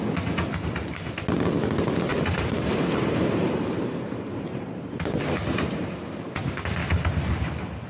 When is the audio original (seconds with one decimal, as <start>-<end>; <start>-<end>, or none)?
0.0-2.1; 6.4-7.9

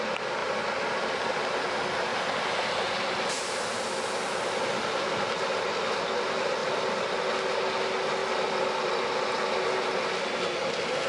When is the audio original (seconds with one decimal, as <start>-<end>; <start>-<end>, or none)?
0.0-0.4; 2.0-6.6; 7.1-8.2; 9.1-11.1